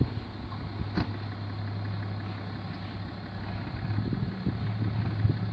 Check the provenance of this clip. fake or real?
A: real